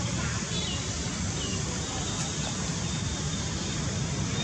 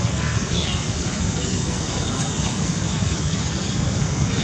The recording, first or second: first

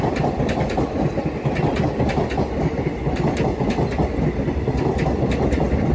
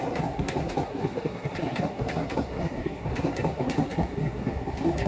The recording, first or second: first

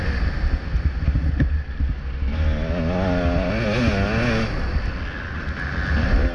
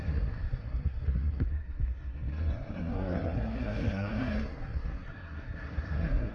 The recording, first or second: first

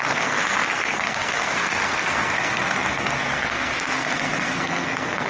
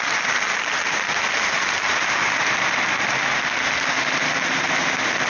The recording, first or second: second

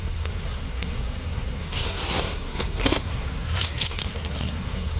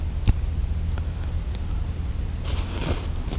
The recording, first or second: second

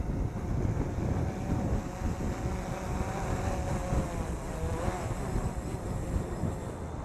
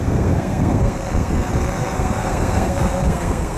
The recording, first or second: first